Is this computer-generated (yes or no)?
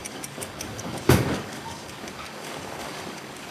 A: yes